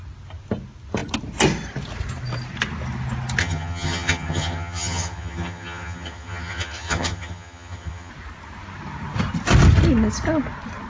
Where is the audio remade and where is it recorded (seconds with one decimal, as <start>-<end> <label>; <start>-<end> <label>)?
0.0-3.4 recorded; 3.4-8.1 remade; 8.1-10.9 recorded